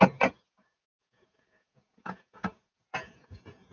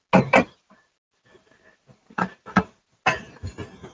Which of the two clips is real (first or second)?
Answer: second